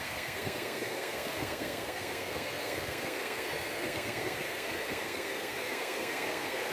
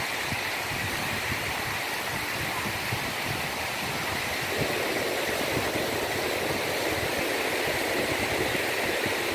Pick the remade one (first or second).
first